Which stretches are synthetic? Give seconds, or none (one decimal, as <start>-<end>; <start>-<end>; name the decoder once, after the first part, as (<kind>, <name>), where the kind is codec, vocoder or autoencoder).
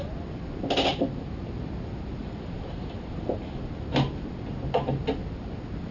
0.9-1.4 (vocoder, BigVGAN v2); 2.2-3.6